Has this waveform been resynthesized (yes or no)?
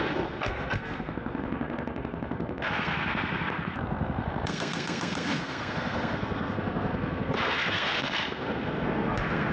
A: yes